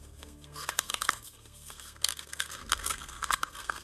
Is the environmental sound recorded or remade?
remade